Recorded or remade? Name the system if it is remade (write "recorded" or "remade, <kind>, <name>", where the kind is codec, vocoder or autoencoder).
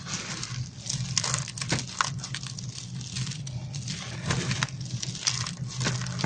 recorded